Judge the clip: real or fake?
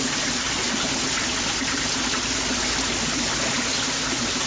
real